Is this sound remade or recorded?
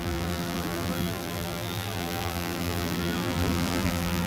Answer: remade